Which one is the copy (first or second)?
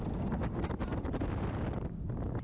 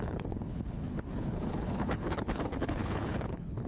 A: second